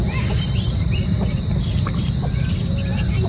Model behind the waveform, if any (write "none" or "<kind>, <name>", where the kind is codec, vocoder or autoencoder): none